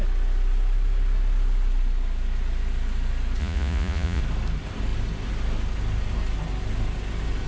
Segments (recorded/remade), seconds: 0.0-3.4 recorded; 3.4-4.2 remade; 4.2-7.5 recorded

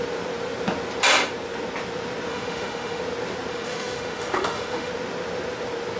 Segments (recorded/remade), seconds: 0.0-2.3 recorded; 2.3-3.0 remade; 3.0-3.5 recorded; 3.5-4.9 remade; 4.9-6.0 recorded

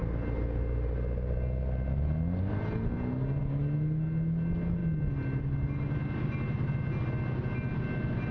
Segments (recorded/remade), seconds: 0.0-8.3 recorded

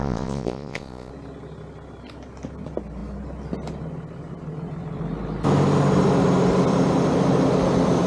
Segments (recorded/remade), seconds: 0.0-1.1 remade; 1.1-8.1 recorded

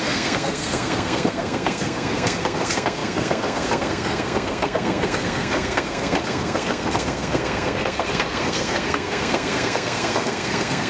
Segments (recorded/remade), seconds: 0.0-10.9 remade

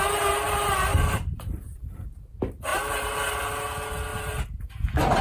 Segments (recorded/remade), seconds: 0.0-0.9 recorded; 0.9-2.1 remade; 2.1-4.1 recorded; 4.1-4.6 remade; 4.6-5.2 recorded

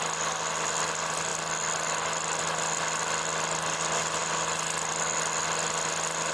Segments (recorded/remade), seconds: 0.0-6.3 recorded

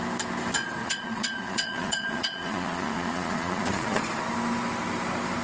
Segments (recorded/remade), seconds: 0.0-0.8 recorded; 0.8-4.0 remade; 4.0-5.4 recorded